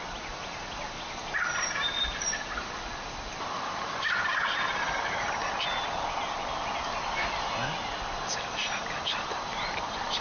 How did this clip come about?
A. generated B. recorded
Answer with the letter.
B